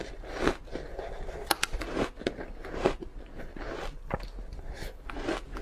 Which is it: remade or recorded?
recorded